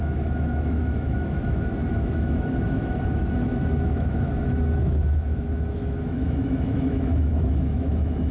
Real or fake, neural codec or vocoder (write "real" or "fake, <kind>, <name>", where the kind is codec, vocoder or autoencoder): fake, autoencoder, DAC-VAE